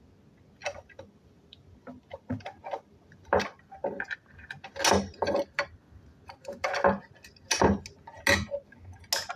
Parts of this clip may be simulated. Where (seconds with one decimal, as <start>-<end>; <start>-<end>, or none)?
0.6-4.7